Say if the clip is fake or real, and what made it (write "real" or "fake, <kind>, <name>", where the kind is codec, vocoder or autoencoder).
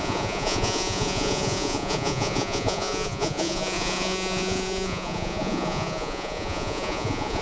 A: fake, vocoder, Vocos